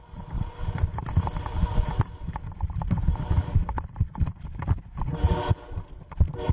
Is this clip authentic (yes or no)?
yes